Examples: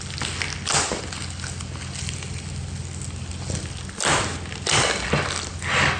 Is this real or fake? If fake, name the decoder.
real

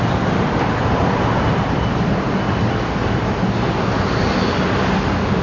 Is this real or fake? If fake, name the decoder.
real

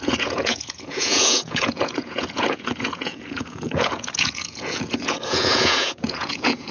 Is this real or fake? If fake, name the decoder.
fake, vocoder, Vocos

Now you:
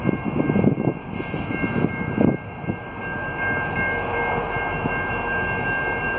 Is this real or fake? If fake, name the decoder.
real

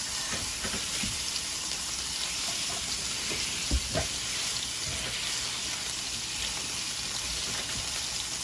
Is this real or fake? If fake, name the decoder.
real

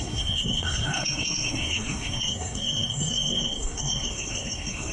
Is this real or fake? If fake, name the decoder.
fake, codec, SNAC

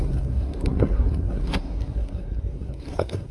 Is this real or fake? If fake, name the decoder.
fake, codec, SNAC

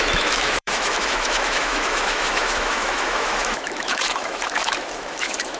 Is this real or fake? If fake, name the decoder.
fake, autoencoder, DAC-VAE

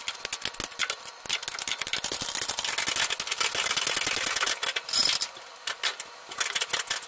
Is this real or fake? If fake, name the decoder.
real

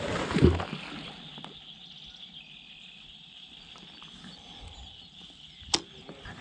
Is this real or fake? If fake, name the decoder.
real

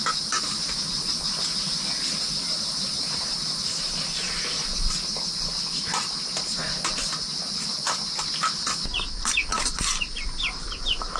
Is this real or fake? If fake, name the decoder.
real